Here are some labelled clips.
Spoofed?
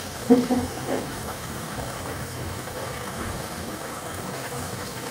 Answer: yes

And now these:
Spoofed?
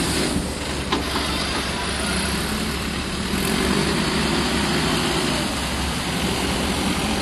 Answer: no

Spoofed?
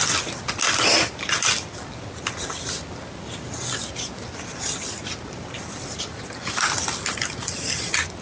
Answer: no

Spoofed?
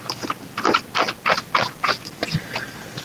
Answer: no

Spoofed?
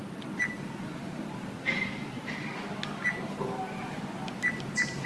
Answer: no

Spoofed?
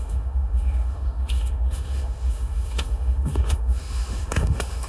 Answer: yes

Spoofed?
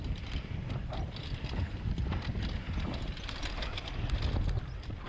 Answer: no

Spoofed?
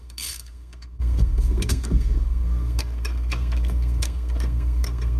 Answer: yes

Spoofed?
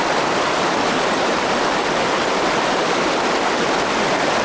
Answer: no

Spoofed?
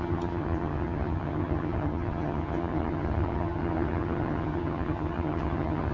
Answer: yes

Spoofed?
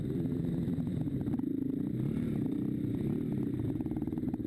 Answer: yes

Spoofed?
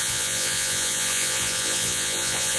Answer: yes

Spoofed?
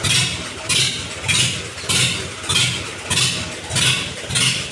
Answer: no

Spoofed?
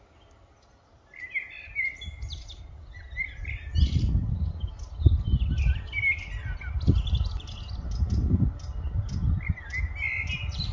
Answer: no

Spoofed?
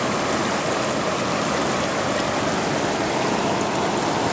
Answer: no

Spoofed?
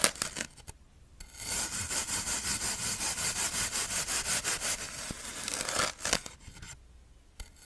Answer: no